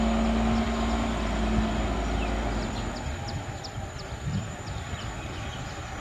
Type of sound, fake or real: real